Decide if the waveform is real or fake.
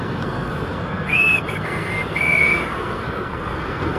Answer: fake